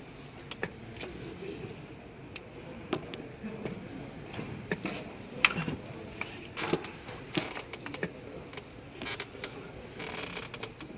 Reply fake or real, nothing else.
real